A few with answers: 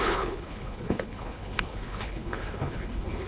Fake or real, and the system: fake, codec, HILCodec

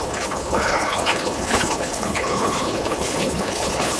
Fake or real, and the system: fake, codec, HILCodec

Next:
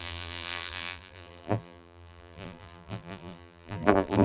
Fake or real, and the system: fake, vocoder, BigVGAN v2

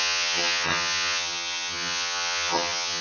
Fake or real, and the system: fake, vocoder, HiFi-GAN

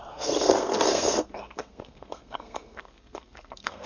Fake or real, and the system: fake, codec, SNAC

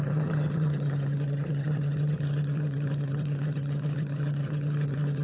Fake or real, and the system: fake, vocoder, HiFi-GAN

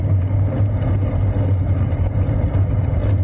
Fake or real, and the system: fake, vocoder, BigVGAN v2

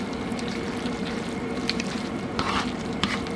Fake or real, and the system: fake, vocoder, BigVGAN v2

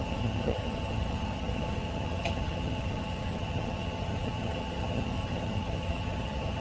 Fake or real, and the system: fake, vocoder, HiFi-GAN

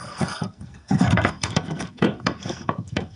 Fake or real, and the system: fake, codec, SNAC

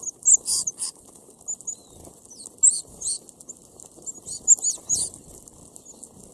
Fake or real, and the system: real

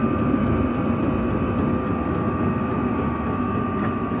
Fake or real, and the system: real